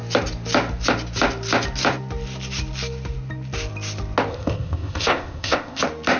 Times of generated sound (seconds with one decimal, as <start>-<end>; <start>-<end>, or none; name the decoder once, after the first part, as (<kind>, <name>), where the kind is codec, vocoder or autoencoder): 4.3-5.8 (codec, ZipCodec)